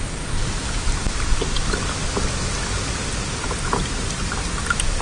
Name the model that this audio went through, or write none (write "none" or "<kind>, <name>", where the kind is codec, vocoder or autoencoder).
none